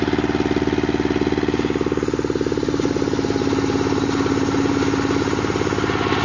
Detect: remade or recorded recorded